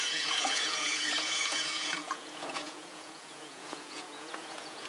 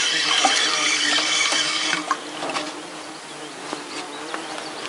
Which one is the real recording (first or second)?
second